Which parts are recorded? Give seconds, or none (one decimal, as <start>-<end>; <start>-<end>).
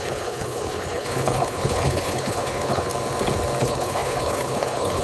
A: 2.9-3.6